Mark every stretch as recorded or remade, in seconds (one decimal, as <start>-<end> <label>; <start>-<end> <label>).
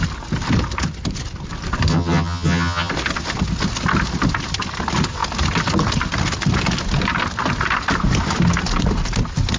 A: 0.0-1.9 recorded; 1.9-2.9 remade; 2.9-9.6 recorded